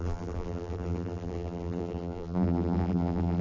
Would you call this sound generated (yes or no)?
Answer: yes